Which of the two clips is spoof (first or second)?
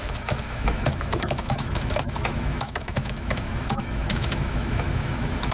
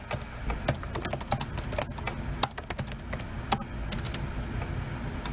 first